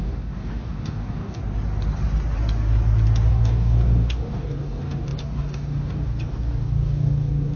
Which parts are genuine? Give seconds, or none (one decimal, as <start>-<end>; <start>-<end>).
1.4-3.3